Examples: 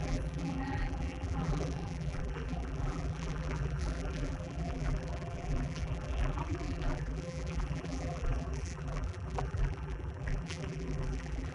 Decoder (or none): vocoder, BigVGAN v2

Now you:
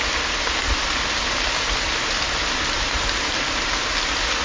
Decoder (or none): none